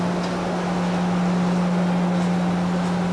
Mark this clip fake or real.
real